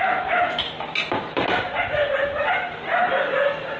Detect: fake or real real